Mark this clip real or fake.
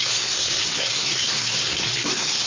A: fake